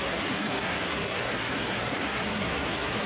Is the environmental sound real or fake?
fake